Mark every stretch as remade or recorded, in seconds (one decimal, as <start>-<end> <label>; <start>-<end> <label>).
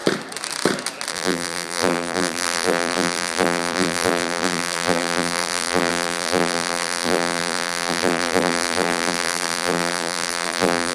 0.0-1.1 recorded; 1.1-10.9 remade